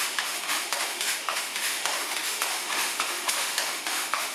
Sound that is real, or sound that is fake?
fake